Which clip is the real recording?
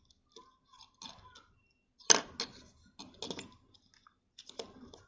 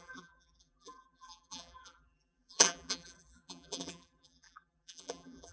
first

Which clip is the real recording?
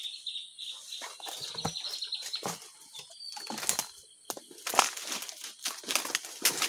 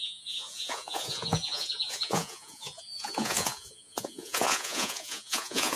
first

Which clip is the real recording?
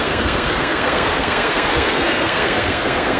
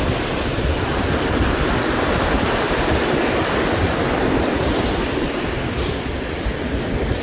second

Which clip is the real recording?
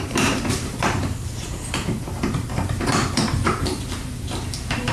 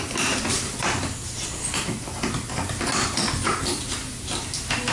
second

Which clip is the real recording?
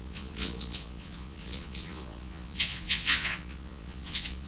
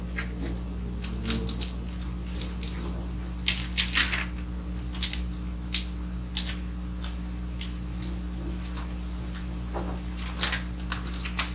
second